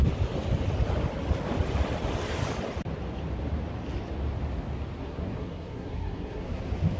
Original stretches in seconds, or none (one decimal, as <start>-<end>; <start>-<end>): 0.0-5.0; 6.6-7.0